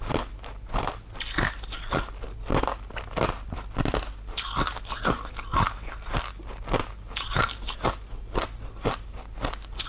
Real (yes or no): yes